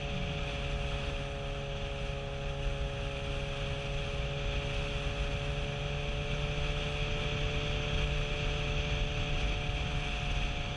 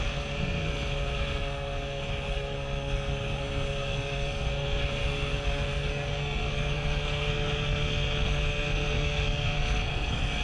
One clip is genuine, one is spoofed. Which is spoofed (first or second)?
second